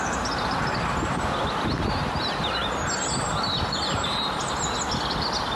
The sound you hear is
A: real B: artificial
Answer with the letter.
A